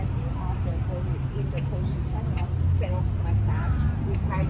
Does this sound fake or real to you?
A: real